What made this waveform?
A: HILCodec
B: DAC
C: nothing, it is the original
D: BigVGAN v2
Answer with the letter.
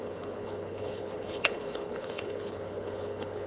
A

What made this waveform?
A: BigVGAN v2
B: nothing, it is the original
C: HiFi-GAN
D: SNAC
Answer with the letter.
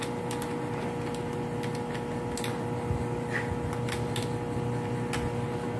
B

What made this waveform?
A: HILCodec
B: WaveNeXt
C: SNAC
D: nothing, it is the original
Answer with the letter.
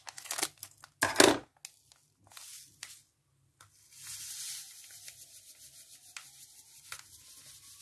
D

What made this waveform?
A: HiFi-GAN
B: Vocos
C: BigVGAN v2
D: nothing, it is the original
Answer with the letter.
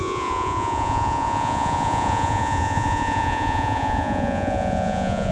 B